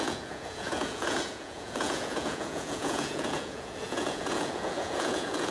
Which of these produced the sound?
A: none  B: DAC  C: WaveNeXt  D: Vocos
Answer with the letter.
D